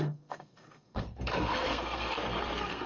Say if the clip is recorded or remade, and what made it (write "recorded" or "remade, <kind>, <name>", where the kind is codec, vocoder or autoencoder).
remade, codec, SNAC